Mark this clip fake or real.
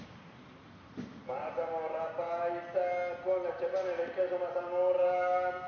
real